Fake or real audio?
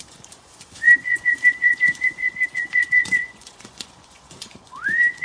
fake